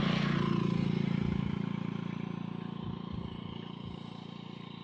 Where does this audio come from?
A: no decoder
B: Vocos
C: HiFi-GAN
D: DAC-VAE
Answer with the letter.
A